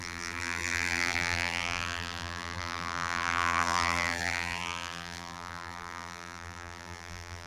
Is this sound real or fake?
fake